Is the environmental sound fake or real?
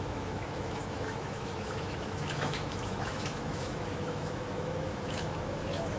fake